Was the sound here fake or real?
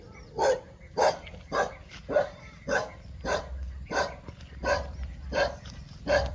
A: real